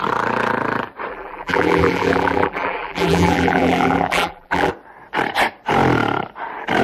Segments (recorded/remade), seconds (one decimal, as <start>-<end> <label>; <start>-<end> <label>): 0.0-1.1 recorded; 1.1-4.7 remade; 4.7-6.8 recorded